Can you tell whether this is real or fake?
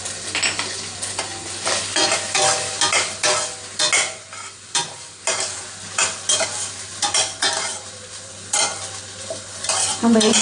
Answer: real